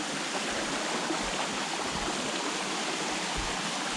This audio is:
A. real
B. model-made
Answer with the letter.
A